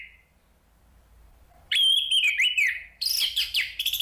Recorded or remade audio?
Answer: remade